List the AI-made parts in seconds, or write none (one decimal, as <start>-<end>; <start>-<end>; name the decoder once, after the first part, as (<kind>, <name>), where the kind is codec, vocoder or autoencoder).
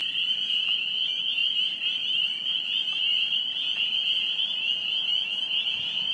0.0-0.6 (vocoder, BigVGAN v2); 1.4-2.1